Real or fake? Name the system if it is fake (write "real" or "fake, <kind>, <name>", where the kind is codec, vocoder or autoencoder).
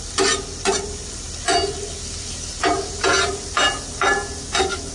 real